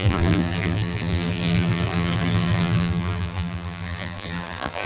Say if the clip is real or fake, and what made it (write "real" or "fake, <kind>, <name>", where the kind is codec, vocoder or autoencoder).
fake, vocoder, BigVGAN v2